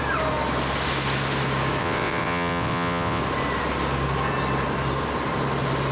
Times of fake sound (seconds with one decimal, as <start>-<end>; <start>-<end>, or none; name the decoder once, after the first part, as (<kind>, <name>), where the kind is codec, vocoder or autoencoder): 1.8-3.2 (vocoder, WaveNeXt)